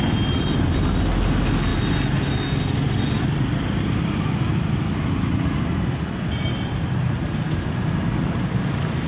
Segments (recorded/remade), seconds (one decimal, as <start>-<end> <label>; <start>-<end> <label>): 0.0-9.1 recorded